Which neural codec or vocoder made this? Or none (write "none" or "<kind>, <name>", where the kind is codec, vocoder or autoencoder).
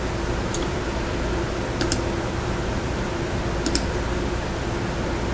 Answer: none